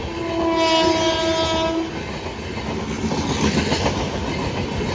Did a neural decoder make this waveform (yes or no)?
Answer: no